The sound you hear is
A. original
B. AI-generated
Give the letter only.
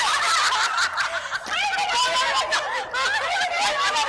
A